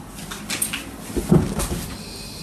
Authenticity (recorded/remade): recorded